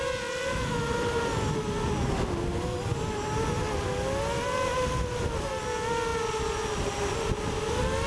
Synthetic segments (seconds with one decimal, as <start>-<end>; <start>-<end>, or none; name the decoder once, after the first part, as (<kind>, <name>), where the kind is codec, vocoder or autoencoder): none